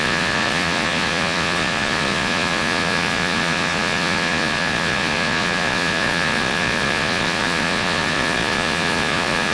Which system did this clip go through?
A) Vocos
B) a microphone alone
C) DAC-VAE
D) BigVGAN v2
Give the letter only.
A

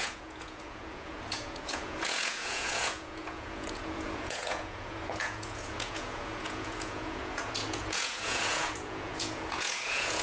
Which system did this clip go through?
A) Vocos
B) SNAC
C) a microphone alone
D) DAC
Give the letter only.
A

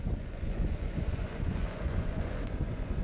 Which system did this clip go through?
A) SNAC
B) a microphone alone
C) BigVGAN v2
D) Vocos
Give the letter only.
D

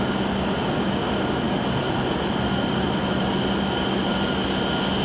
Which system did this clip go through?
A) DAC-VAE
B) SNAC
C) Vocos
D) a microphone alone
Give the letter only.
D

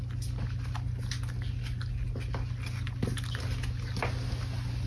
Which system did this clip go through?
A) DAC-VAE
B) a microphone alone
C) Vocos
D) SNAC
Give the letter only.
B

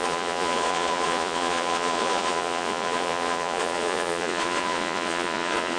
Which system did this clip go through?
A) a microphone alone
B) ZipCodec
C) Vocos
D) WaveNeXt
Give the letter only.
C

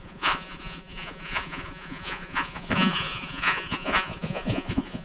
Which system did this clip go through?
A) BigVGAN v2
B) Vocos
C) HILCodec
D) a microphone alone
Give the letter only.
B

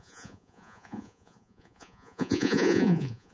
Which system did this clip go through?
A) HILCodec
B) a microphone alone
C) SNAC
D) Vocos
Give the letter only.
D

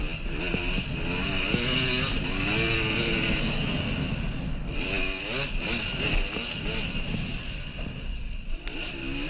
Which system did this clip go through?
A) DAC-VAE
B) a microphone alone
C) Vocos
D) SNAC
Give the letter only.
B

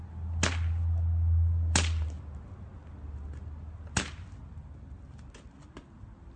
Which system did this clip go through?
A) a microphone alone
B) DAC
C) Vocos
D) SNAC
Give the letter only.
A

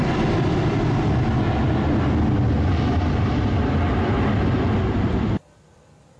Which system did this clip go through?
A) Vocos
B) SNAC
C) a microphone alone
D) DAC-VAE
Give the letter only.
C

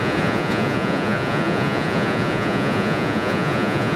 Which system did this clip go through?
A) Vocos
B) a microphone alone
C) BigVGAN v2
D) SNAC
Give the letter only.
A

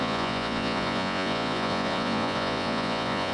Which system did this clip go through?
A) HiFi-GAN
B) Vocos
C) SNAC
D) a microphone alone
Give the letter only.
B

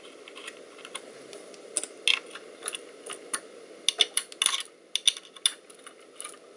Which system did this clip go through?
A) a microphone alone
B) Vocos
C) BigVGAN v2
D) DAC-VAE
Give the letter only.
A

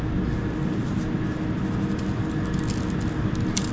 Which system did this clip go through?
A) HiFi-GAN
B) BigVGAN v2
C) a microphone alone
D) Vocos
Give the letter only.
C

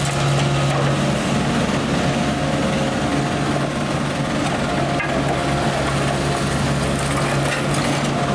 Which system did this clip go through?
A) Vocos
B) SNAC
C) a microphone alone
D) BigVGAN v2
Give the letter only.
C